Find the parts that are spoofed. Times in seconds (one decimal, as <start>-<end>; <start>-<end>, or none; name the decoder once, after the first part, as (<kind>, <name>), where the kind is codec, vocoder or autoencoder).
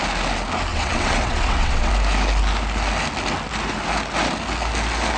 0.7-1.9 (vocoder, WaveNeXt)